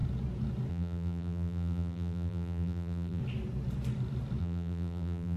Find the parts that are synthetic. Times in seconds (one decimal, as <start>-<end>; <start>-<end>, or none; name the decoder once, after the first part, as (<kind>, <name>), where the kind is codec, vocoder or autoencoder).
0.7-3.2 (vocoder, BigVGAN v2); 4.4-5.4